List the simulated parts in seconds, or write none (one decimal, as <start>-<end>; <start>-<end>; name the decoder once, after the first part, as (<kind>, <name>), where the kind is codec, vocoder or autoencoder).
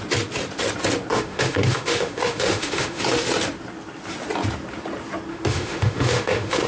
1.1-3.0 (autoencoder, DAC-VAE); 5.3-6.7